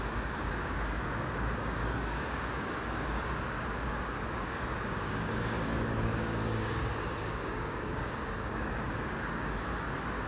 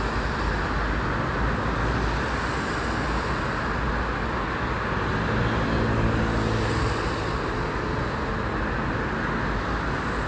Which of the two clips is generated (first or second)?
first